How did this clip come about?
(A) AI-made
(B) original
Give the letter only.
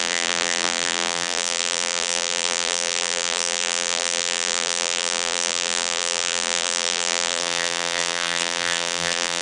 A